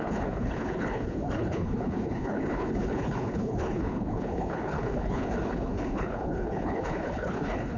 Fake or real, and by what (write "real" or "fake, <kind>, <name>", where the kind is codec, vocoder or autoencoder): fake, codec, HILCodec